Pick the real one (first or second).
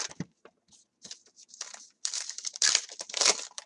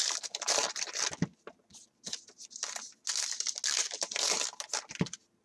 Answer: second